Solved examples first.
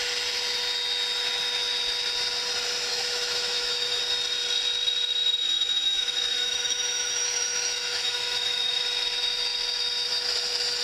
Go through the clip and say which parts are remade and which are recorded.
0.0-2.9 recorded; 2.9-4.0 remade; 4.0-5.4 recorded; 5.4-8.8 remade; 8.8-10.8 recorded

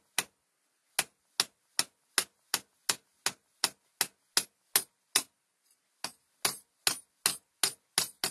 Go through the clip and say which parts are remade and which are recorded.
0.0-8.3 recorded